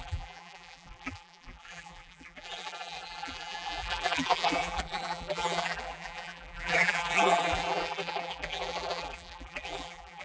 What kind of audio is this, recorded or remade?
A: remade